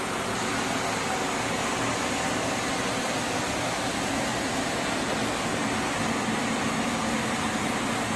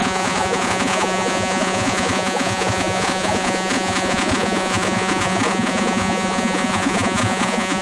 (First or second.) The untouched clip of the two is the first